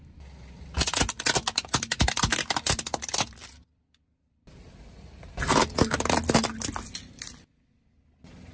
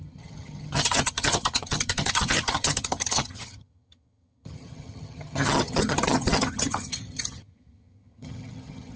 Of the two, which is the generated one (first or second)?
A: second